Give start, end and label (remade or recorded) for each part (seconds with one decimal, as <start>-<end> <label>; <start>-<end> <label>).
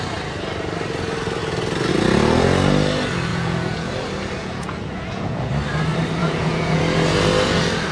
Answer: 0.0-3.3 recorded; 3.3-3.9 remade; 3.9-4.4 recorded; 4.4-5.5 remade; 5.5-6.2 recorded; 6.2-6.8 remade; 6.8-7.9 recorded